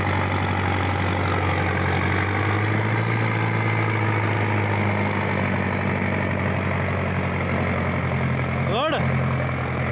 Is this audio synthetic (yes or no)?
no